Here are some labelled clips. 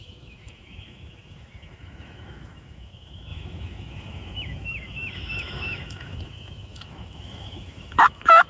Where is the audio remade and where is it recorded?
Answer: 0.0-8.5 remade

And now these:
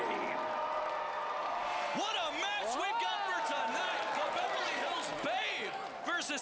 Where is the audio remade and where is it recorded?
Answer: 0.0-6.4 recorded

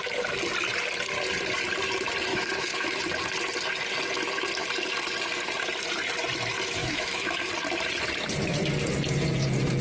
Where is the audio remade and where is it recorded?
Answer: 0.0-2.3 recorded; 2.3-3.0 remade; 3.0-6.8 recorded; 6.8-7.5 remade; 7.5-9.8 recorded

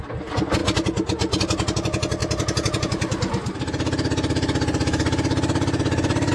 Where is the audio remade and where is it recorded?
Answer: 0.0-6.3 recorded